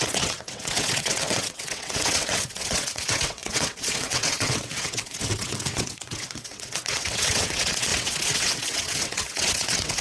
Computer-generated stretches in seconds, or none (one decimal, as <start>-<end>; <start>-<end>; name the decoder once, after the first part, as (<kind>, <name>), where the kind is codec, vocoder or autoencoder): 0.0-10.0 (vocoder, WaveNeXt)